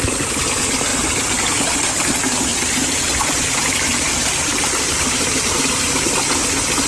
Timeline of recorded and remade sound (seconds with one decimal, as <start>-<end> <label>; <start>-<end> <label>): 0.0-2.5 recorded; 2.5-6.2 remade; 6.2-6.9 recorded